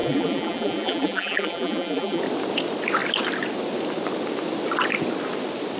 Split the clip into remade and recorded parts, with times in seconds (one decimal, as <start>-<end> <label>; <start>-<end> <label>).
0.0-2.2 remade; 2.2-5.8 recorded